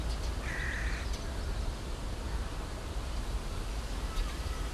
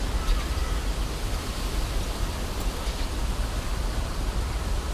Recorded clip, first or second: first